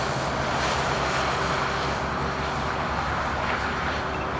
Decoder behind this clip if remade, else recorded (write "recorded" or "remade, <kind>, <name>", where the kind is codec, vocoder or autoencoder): recorded